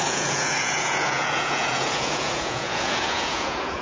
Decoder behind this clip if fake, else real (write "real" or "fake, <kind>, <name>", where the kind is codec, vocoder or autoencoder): fake, vocoder, Vocos